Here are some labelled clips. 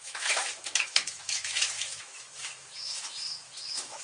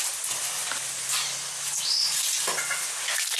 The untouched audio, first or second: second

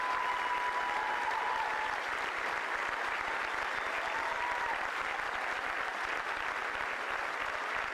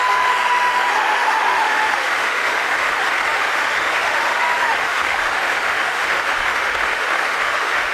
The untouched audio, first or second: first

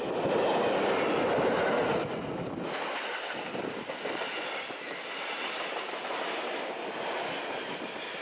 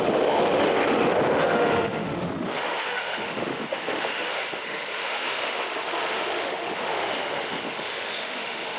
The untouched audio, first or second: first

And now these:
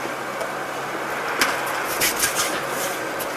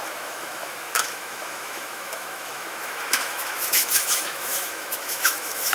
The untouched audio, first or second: first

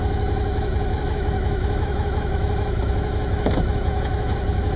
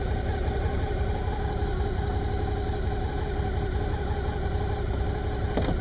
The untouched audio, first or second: second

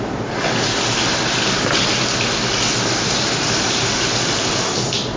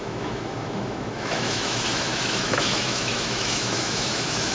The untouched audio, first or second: first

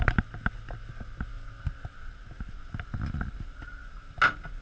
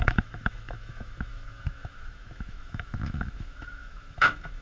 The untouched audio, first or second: first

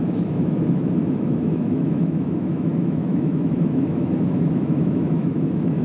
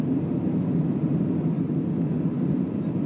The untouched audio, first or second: second